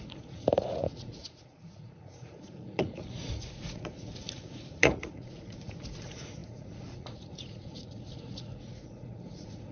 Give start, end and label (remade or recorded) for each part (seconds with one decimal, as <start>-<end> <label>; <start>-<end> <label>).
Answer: 0.0-9.7 remade